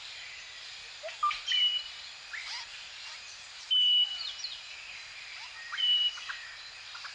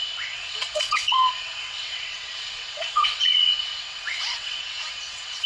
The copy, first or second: second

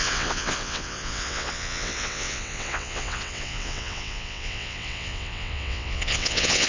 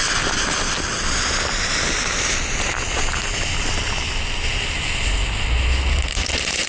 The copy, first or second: first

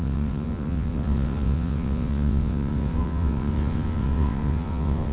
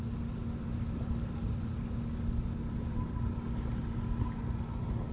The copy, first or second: first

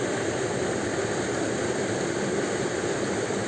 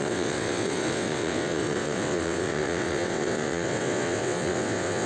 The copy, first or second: second